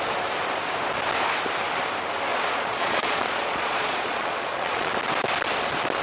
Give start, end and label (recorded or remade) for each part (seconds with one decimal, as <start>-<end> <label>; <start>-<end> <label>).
0.0-2.3 recorded; 2.3-4.9 remade; 4.9-6.0 recorded